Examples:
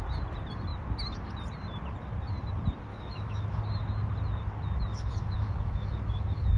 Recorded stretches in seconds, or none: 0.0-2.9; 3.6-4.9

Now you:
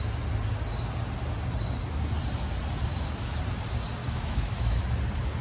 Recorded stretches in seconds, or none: 0.0-2.9; 3.4-4.0; 4.8-5.4

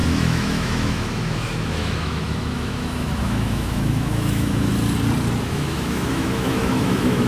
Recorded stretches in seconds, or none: 4.7-5.4

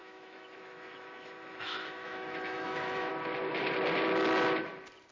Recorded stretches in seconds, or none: 3.1-5.1

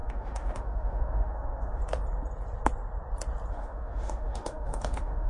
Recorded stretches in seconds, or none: 1.8-3.5

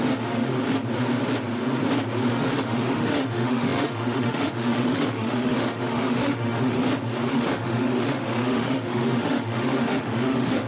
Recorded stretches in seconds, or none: 0.5-2.3; 6.8-7.3

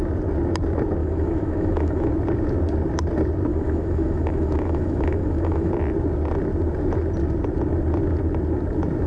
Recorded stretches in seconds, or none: 0.0-1.0; 2.1-3.5; 5.7-9.1